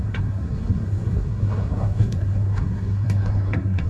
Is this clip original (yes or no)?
no